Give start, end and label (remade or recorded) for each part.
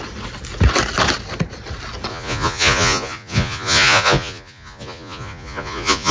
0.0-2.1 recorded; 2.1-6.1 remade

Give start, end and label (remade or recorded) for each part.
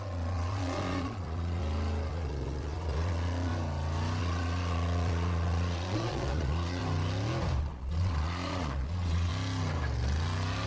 0.0-1.6 remade; 1.6-2.1 recorded; 2.1-3.5 remade; 3.5-4.2 recorded; 4.2-6.8 remade; 6.8-7.6 recorded; 7.6-9.3 remade; 9.3-10.7 recorded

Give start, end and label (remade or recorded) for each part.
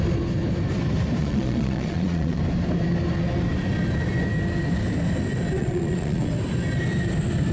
0.0-1.2 recorded; 1.2-2.4 remade; 2.4-5.6 recorded; 5.6-6.3 remade; 6.3-7.5 recorded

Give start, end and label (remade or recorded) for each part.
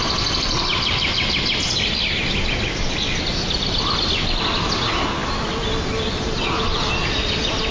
0.0-7.7 recorded